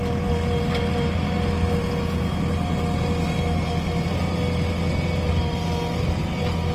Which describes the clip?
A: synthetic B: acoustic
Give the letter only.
B